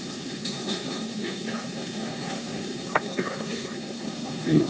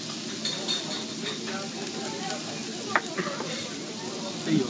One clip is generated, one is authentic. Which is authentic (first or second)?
second